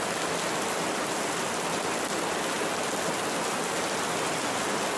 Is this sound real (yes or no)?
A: yes